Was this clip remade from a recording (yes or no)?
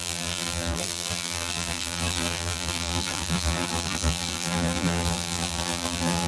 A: yes